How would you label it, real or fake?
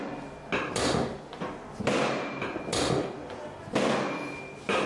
real